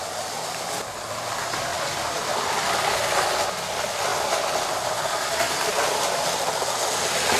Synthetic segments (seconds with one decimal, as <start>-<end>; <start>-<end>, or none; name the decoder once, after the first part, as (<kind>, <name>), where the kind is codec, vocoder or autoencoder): none